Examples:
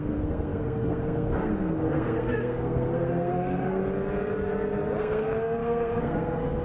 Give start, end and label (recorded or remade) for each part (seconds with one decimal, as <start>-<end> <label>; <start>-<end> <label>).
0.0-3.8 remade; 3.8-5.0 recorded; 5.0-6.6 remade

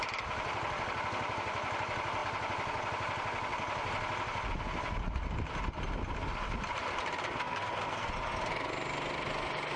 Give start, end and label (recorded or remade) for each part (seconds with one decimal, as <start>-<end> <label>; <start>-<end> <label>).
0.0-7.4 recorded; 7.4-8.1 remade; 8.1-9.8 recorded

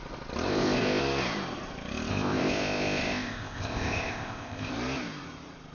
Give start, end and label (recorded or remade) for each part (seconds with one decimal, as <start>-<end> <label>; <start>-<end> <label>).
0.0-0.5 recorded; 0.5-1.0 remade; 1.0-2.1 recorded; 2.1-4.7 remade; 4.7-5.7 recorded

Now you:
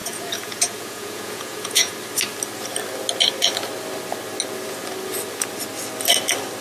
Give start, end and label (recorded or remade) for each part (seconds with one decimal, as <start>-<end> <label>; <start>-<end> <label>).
0.0-1.9 remade; 1.9-6.6 recorded

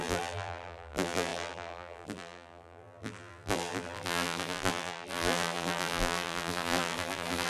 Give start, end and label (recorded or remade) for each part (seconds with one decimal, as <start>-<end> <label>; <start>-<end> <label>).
0.0-7.5 remade